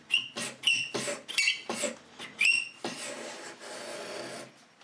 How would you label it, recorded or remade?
recorded